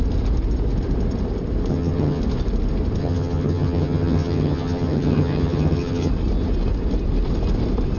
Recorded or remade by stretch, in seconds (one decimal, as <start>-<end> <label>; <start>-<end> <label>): 0.0-1.7 recorded; 1.7-2.2 remade; 2.2-3.0 recorded; 3.0-6.1 remade; 6.1-8.0 recorded